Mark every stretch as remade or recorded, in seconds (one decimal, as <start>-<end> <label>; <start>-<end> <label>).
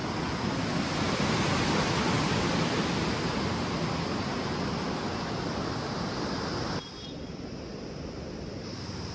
0.0-9.1 recorded